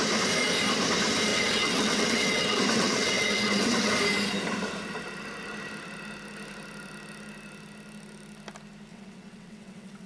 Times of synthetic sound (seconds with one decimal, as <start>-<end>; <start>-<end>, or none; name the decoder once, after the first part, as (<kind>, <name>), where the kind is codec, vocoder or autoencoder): 1.3-3.9 (vocoder, WaveNeXt); 8.9-10.1